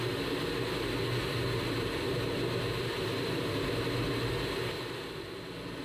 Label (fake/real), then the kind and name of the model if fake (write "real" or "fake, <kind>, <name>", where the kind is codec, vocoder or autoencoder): real